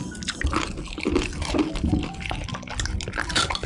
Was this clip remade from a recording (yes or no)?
no